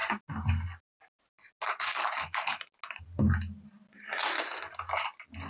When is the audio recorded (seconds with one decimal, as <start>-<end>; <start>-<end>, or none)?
0.0-5.5